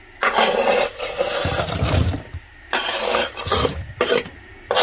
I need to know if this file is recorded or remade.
recorded